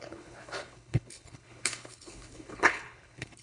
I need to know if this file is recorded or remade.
remade